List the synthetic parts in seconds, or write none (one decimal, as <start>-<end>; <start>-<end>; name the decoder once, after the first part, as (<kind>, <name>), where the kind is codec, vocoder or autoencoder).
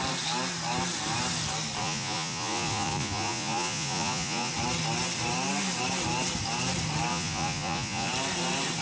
1.8-4.5 (vocoder, Vocos); 7.1-8.1